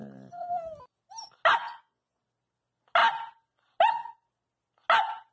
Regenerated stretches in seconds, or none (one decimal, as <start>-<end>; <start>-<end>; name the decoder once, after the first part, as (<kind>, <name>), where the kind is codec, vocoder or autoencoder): 1.6-2.2 (vocoder, Vocos)

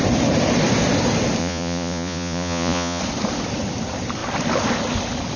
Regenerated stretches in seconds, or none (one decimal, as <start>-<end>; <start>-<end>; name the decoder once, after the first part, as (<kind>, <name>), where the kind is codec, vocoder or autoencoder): 1.4-3.0 (vocoder, Vocos)

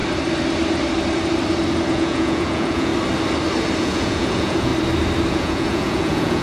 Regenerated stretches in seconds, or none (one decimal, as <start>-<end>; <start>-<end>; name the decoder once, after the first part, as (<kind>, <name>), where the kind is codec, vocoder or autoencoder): 1.9-2.9 (vocoder, Vocos); 3.8-4.7; 5.3-6.4

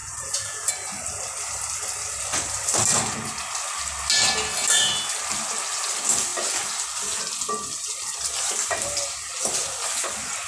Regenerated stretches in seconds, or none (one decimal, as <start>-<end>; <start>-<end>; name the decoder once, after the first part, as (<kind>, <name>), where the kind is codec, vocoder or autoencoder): 0.0-0.7 (vocoder, Vocos)

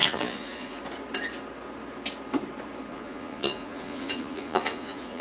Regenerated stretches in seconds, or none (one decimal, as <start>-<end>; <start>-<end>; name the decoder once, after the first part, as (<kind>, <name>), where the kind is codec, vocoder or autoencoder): 0.0-0.8 (vocoder, Vocos); 2.9-5.2